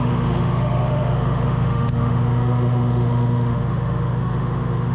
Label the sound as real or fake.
fake